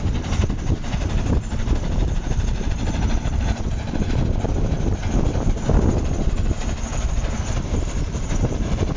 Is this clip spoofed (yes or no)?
yes